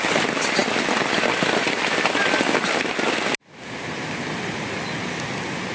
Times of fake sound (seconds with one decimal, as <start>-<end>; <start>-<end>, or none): none